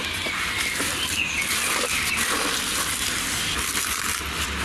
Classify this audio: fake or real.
fake